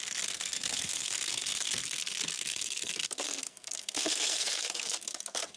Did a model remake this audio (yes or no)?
yes